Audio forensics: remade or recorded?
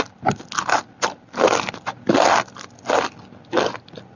recorded